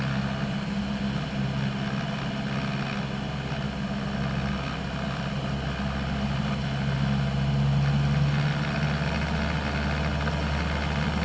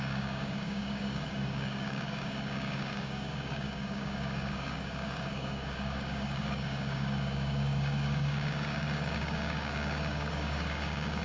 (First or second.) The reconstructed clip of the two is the second